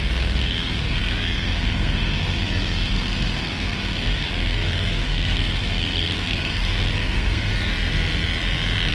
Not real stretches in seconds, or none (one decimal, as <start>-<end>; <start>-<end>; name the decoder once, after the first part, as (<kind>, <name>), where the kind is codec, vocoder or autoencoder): 0.0-7.5 (codec, SNAC)